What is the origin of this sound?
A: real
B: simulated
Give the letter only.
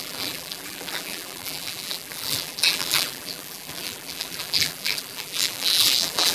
B